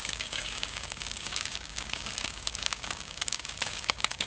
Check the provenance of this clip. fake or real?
fake